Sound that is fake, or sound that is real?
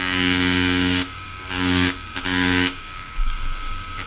fake